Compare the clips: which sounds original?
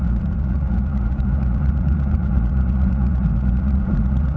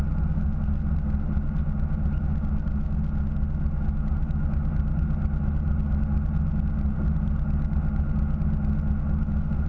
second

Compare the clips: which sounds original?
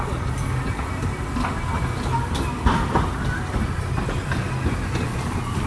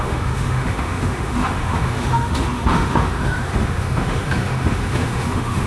first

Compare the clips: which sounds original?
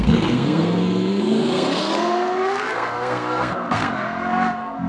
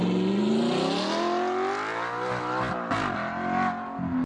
second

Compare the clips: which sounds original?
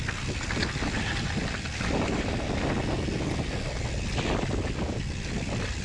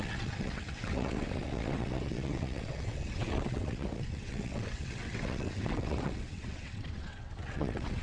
first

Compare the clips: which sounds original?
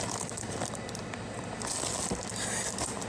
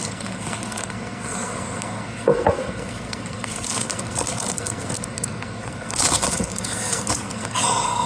first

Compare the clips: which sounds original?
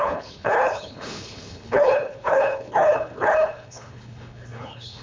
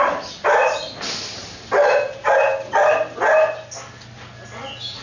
second